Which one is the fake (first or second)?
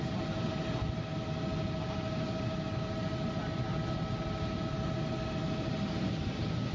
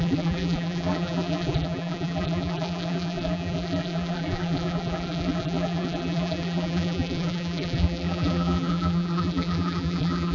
second